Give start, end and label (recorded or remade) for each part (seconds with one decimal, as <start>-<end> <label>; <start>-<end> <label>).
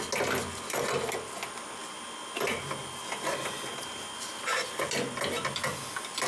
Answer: 0.0-6.3 recorded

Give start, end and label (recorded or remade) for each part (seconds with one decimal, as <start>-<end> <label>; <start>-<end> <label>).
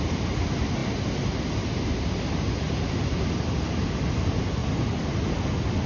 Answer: 0.0-4.6 recorded; 4.6-5.1 remade; 5.1-5.9 recorded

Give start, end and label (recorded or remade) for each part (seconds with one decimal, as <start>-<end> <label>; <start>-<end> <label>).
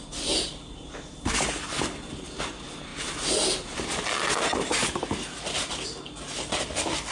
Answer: 0.0-7.1 recorded